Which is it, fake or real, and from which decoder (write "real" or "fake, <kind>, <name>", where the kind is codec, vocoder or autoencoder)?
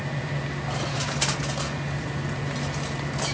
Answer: real